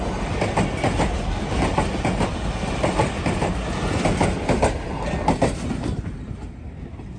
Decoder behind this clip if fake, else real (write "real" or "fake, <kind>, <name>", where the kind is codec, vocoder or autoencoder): real